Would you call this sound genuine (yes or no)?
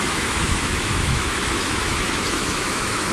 no